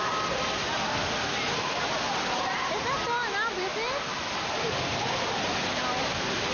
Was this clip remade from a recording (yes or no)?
no